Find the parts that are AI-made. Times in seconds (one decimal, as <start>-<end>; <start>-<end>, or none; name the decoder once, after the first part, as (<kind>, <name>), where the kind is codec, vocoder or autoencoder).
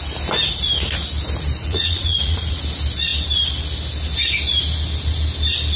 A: 1.6-2.6 (vocoder, Vocos)